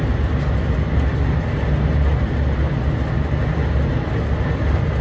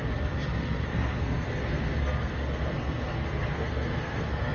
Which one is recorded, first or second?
first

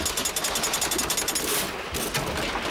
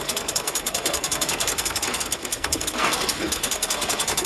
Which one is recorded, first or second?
first